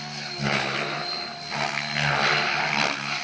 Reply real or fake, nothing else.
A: real